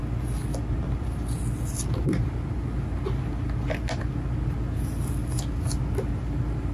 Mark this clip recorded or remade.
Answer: recorded